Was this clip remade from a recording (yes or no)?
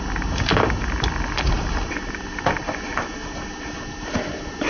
no